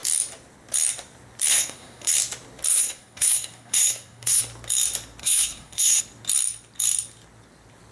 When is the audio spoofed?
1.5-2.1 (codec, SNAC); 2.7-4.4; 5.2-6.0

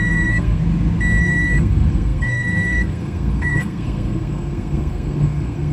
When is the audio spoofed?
0.0-0.6 (codec, SNAC); 1.2-5.7

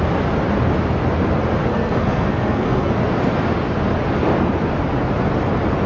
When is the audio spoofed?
1.7-2.9 (codec, SNAC)

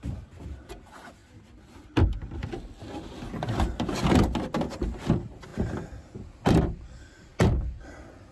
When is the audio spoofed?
none

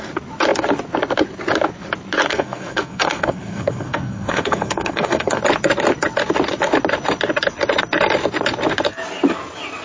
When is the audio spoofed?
2.3-5.4 (codec, SNAC)

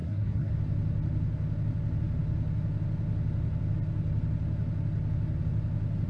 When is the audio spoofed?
0.0-0.5 (codec, SNAC)

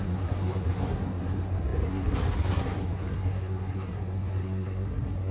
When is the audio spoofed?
0.0-5.3 (codec, SNAC)

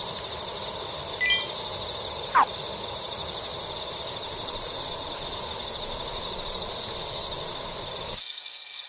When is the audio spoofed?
8.2-8.9 (codec, SNAC)